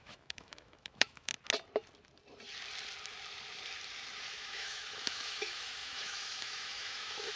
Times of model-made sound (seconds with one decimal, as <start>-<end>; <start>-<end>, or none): 0.0-1.3; 4.3-7.4